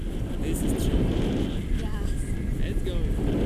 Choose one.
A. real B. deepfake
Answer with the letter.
A